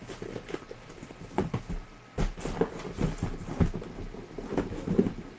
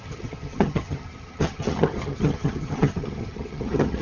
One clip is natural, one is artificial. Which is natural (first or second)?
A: first